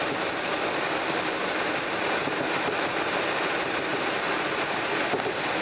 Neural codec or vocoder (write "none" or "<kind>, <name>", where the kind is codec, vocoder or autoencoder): none